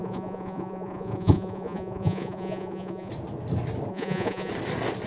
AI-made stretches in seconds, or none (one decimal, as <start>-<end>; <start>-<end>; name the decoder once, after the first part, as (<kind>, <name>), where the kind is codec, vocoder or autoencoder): 0.0-3.1 (vocoder, Vocos); 3.9-4.5